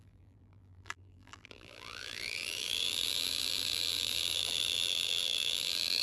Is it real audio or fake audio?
fake